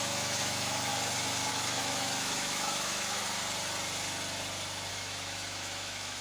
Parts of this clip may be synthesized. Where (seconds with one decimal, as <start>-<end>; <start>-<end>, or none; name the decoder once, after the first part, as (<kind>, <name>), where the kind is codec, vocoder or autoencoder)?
0.0-0.9 (autoencoder, DAC-VAE); 1.5-3.2; 4.9-6.2